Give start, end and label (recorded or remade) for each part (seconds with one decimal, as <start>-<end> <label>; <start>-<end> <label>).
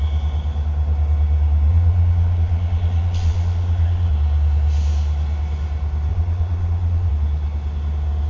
0.0-1.7 recorded; 1.7-4.1 remade; 4.1-6.1 recorded; 6.1-7.1 remade; 7.1-8.3 recorded